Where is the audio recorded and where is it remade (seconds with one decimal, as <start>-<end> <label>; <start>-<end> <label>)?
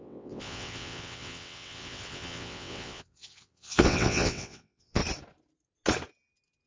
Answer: 0.0-5.0 remade; 5.0-6.7 recorded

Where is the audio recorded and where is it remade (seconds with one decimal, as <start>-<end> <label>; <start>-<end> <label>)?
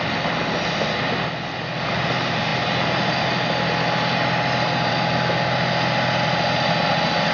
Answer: 0.0-7.3 recorded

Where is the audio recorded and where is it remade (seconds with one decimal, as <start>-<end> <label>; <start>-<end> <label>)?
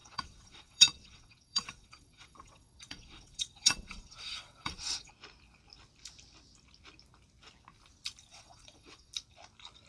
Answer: 0.0-5.1 remade; 5.1-8.3 recorded; 8.3-9.1 remade; 9.1-9.9 recorded